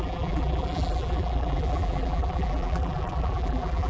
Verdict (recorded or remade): remade